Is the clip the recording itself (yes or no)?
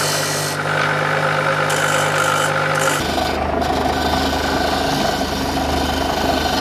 yes